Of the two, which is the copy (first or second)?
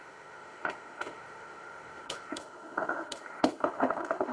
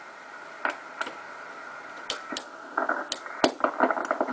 first